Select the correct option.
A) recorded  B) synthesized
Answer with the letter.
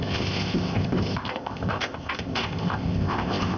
B